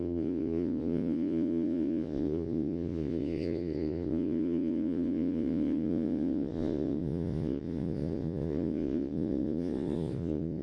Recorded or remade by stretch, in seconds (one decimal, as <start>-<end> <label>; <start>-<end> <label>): 0.0-10.6 remade